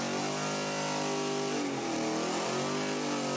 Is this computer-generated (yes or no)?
no